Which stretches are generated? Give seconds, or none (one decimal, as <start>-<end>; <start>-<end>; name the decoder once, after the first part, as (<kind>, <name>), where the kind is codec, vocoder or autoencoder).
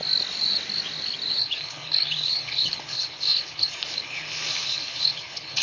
1.4-5.6 (codec, HILCodec)